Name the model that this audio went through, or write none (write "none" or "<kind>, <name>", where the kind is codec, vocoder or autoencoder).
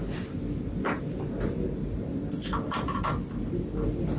none